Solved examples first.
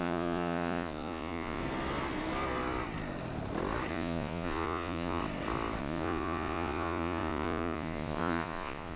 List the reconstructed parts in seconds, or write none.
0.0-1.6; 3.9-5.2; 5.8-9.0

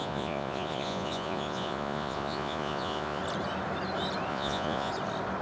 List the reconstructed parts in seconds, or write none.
0.0-3.2; 4.3-4.9

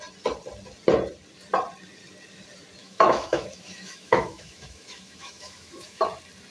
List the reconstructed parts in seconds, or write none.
2.8-6.0

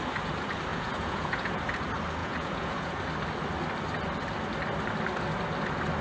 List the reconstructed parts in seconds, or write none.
0.7-1.6; 2.2-3.0

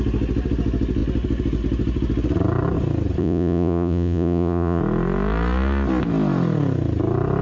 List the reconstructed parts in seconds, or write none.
3.2-4.8

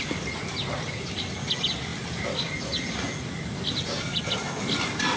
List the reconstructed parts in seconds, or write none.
none

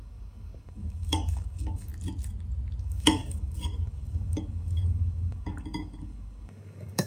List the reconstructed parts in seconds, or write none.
0.0-1.9; 2.8-7.1